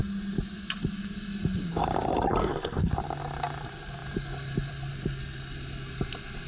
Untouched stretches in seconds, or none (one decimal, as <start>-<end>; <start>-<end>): 0.0-2.4; 2.9-6.5